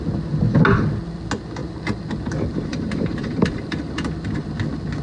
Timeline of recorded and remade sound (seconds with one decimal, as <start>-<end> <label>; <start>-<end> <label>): 0.0-1.6 recorded; 1.6-2.1 remade; 2.1-2.7 recorded; 2.7-3.9 remade; 3.9-5.0 recorded